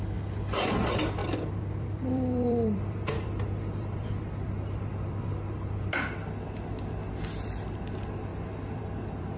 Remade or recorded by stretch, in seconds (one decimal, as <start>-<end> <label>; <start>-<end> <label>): 0.0-1.2 recorded; 1.2-6.1 remade; 6.1-8.3 recorded; 8.3-9.4 remade